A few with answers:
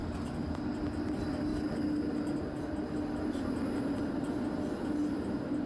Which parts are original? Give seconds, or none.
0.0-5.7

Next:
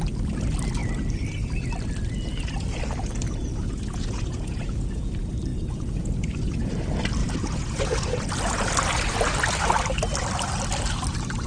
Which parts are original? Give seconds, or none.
0.0-3.5; 5.1-5.5; 6.7-7.2; 8.3-11.5

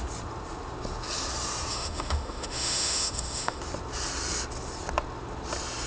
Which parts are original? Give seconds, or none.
0.0-1.7; 3.6-5.9

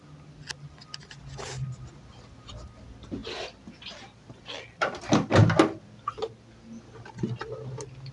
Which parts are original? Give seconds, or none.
0.0-8.1

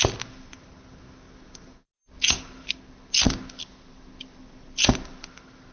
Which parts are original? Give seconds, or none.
0.0-5.7

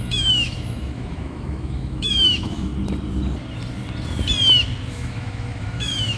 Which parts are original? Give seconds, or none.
2.7-4.9

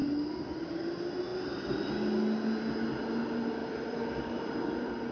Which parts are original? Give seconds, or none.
0.0-3.6; 4.5-5.1